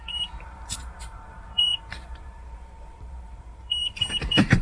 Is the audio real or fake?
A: fake